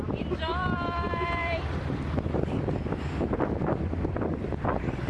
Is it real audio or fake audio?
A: fake